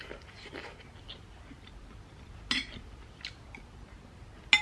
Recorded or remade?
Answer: recorded